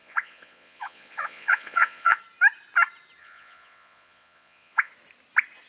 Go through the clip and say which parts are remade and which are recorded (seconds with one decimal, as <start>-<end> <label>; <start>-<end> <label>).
0.0-2.2 remade; 2.2-3.2 recorded; 3.2-4.9 remade; 4.9-5.7 recorded